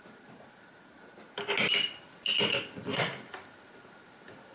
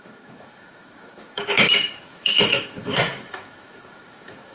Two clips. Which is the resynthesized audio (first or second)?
second